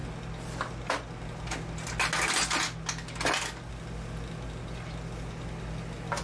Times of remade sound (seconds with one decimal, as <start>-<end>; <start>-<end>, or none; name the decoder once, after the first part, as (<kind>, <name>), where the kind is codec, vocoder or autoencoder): none